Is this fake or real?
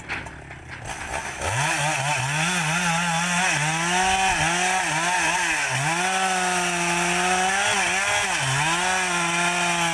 real